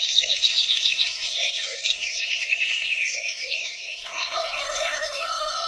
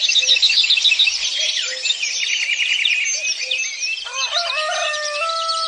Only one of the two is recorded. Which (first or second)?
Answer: second